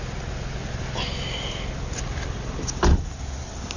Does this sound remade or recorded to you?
recorded